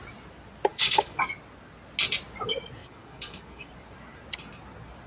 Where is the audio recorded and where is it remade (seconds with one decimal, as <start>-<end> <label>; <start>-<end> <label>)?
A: 0.0-0.7 recorded; 0.7-1.3 remade; 1.3-2.8 recorded; 2.8-3.7 remade; 3.7-5.1 recorded